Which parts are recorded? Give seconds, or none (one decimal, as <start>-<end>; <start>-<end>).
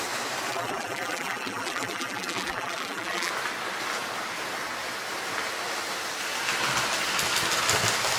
0.0-0.5; 3.3-8.2